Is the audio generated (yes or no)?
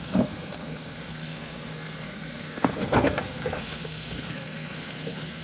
yes